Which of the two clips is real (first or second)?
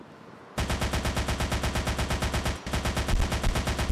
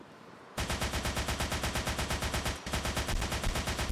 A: first